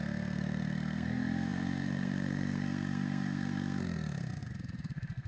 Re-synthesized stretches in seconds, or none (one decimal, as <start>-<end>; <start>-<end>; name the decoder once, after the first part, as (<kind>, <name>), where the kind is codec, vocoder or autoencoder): 0.0-5.3 (codec, SNAC)